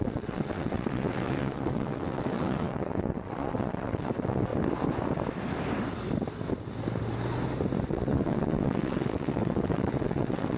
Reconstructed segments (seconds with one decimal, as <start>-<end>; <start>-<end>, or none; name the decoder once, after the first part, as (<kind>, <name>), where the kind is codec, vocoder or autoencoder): 0.0-4.5 (vocoder, WaveNeXt); 7.9-10.6